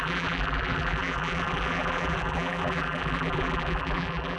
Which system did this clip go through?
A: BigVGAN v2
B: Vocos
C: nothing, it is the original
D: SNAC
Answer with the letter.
A